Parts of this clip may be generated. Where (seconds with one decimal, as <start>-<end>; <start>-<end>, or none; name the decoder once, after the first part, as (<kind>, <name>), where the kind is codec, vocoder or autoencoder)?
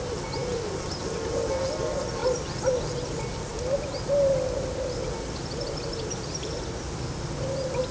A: none